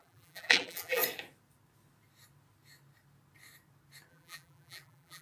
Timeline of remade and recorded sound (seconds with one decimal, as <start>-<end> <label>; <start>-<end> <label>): 0.0-1.0 remade; 1.0-4.1 recorded; 4.1-5.2 remade

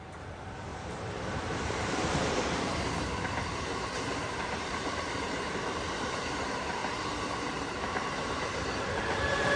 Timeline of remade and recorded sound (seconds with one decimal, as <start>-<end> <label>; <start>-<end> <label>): 0.0-6.8 remade; 6.8-7.8 recorded; 7.8-9.6 remade

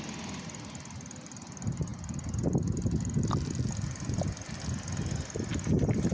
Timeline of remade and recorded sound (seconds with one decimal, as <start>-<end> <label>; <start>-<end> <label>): 0.0-6.1 recorded

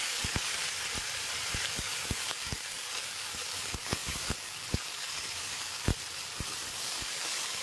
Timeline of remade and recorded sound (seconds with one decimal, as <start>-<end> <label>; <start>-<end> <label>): 0.0-0.6 remade; 0.6-1.8 recorded; 1.8-5.9 remade; 5.9-6.8 recorded; 6.8-7.6 remade